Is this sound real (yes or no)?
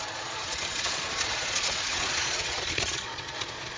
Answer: no